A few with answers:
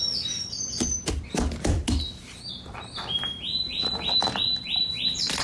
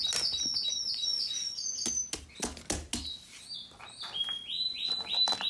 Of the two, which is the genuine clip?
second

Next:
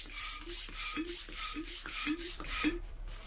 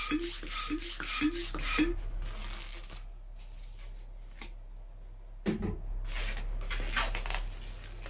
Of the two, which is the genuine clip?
second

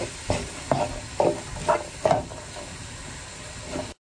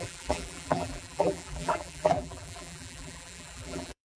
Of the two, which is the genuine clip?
first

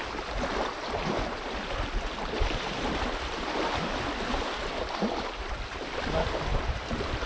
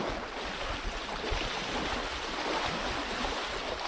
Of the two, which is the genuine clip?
second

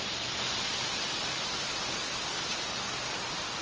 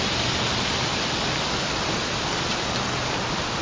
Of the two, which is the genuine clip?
first